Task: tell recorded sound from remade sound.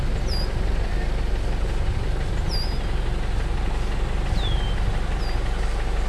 recorded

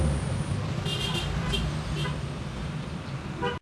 recorded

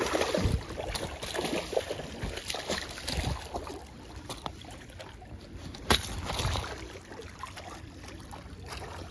recorded